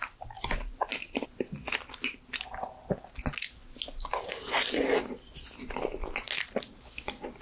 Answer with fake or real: real